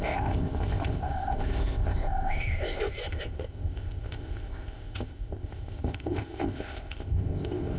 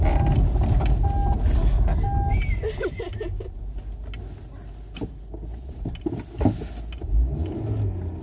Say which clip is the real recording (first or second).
second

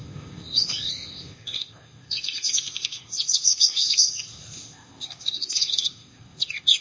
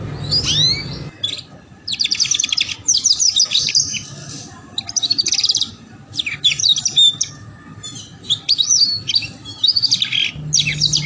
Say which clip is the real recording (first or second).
second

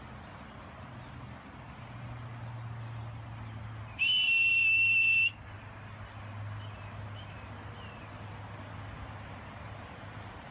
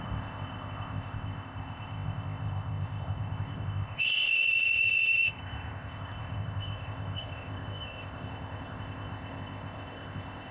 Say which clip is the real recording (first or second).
first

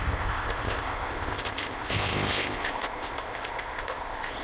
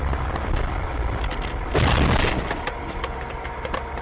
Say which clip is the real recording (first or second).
second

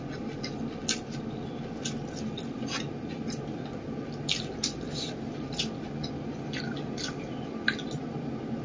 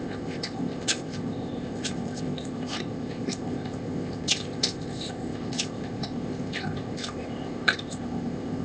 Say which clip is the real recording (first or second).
first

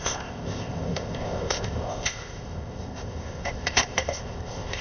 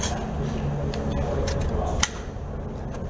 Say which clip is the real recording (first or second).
second